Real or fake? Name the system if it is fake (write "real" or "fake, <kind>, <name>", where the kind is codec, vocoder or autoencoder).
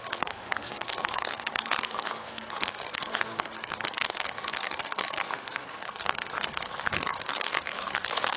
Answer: fake, codec, SNAC